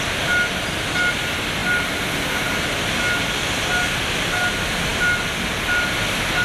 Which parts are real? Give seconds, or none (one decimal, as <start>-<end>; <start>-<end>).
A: 0.0-6.4